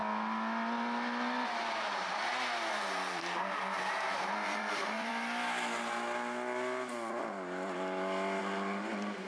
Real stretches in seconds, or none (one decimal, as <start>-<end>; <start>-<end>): 0.0-2.7; 5.1-8.4